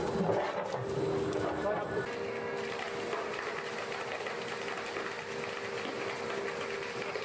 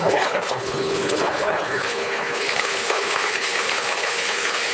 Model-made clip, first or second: second